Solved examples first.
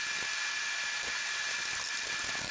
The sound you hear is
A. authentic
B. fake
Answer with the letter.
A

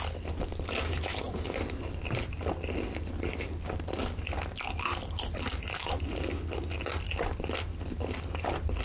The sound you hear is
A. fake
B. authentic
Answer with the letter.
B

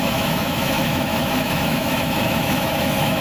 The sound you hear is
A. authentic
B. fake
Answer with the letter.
B